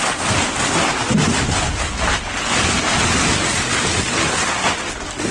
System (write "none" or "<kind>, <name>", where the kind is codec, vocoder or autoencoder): none